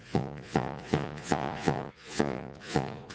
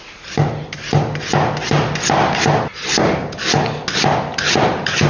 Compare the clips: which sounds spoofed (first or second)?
first